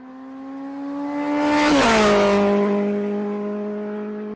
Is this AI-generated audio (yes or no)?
no